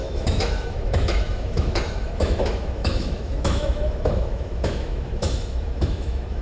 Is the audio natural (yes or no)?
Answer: no